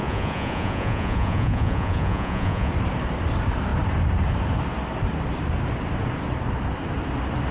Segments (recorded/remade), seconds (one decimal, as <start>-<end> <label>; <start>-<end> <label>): 0.0-2.7 remade; 2.7-7.5 recorded